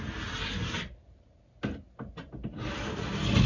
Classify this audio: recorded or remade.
recorded